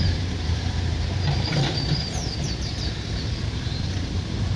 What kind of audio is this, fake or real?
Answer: fake